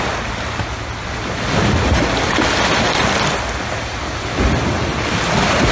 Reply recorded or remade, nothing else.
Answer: recorded